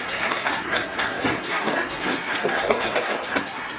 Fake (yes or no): yes